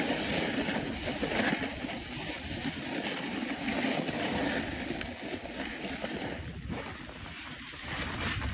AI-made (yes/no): no